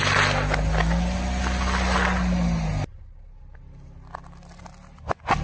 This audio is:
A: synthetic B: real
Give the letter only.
B